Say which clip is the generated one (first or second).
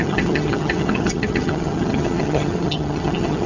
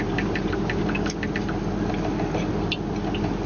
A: first